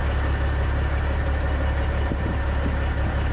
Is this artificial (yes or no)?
no